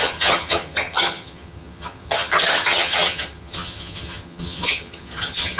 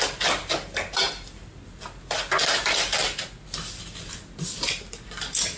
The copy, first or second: first